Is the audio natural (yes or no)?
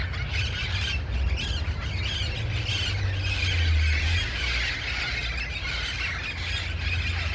yes